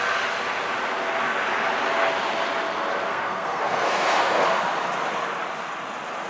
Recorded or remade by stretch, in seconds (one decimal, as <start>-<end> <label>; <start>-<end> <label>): 0.0-3.1 recorded; 3.1-4.4 remade; 4.4-6.3 recorded